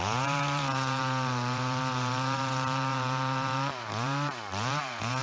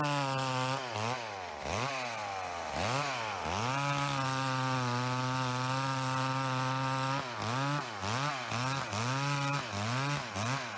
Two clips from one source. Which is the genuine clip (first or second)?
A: second